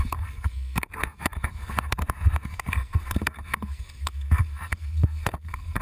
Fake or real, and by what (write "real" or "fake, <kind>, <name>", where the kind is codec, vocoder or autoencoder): fake, codec, SNAC